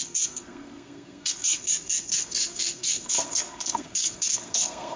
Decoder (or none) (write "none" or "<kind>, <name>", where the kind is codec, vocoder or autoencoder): codec, SNAC